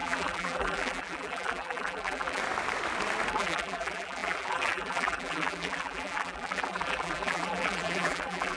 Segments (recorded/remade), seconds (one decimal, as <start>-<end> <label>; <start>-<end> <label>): 0.0-2.4 remade; 2.4-3.3 recorded; 3.3-8.6 remade